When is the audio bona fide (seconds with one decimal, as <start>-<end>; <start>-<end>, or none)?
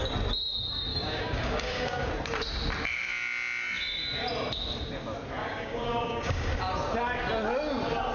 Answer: 0.0-0.9; 2.1-5.4; 6.5-8.1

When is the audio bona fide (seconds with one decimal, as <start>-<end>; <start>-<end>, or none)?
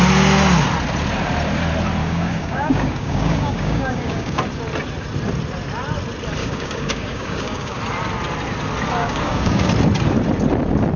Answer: 0.0-2.0; 4.4-6.4; 7.8-9.0; 9.7-11.0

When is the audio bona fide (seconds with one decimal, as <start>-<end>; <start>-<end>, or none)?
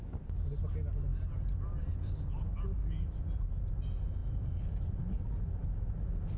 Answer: 0.0-6.4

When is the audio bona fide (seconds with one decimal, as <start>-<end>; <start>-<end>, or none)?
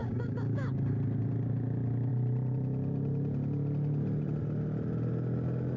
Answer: 0.9-5.8